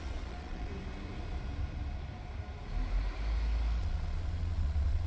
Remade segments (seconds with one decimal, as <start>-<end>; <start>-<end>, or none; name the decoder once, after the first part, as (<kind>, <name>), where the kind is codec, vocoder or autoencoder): 0.0-0.7 (vocoder, Vocos); 3.8-5.1